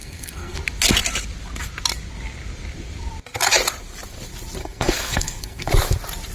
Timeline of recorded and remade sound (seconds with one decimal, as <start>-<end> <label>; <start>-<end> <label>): 0.0-0.6 remade; 0.6-4.6 recorded; 4.6-5.7 remade; 5.7-6.3 recorded